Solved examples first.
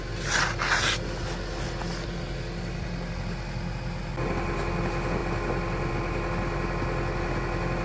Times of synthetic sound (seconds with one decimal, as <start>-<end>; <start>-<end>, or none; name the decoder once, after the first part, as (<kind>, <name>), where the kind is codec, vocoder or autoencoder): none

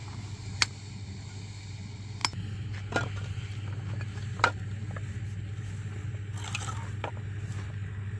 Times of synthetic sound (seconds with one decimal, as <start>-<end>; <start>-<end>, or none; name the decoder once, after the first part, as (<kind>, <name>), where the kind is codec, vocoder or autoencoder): none

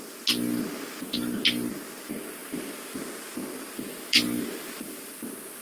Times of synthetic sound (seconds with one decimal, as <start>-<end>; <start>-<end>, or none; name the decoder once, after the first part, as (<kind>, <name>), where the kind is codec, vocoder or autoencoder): none

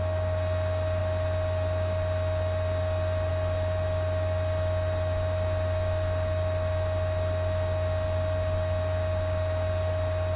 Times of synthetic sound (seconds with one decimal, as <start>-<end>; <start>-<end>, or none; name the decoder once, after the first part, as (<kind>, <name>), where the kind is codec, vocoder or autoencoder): none

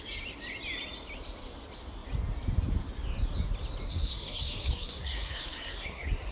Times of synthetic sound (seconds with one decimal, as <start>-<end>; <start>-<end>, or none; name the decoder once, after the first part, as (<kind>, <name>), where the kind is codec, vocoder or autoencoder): 3.9-6.3 (codec, SNAC)

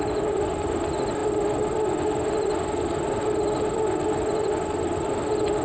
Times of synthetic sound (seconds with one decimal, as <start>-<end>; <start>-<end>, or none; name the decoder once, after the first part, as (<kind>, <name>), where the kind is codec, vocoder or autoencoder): none

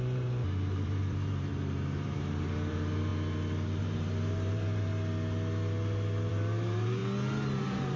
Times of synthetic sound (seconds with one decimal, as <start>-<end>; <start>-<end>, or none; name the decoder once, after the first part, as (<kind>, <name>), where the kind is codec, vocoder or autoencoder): 0.0-3.1 (vocoder, BigVGAN v2); 3.8-4.9; 6.3-7.0; 7.6-8.0

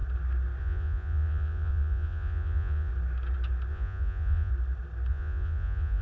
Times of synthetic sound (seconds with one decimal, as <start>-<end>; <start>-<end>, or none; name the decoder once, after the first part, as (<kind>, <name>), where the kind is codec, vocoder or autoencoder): 0.6-2.9 (vocoder, Vocos); 3.7-4.5; 5.1-6.0